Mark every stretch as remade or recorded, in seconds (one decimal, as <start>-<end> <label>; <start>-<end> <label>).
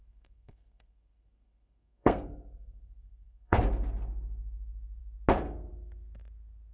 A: 0.0-3.6 remade; 3.6-6.7 recorded